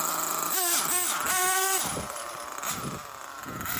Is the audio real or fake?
real